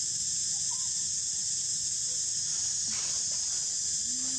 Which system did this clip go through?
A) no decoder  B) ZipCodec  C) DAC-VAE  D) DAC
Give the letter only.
A